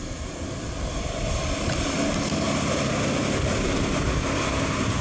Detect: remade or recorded recorded